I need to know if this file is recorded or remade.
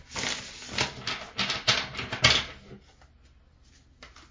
recorded